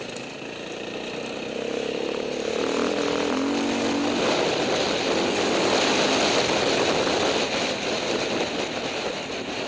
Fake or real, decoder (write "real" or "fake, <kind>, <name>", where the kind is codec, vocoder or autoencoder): real